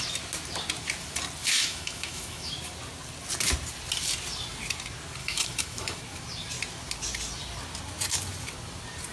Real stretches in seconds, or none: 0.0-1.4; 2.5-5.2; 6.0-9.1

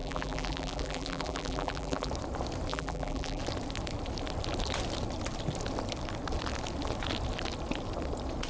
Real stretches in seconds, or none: 2.1-2.7; 3.4-8.5

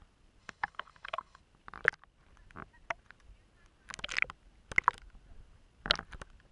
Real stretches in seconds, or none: 0.0-0.4; 1.4-6.5

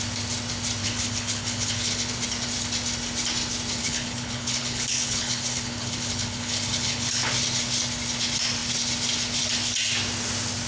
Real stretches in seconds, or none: 0.0-0.8; 2.1-3.8; 7.3-10.7

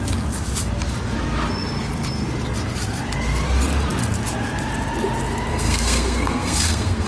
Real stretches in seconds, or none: 0.0-5.5

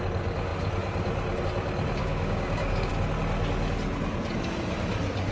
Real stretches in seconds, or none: 0.0-2.0; 2.9-5.3